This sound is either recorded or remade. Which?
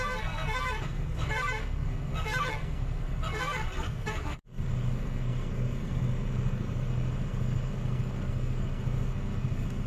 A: remade